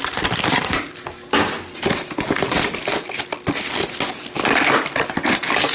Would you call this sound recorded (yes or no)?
yes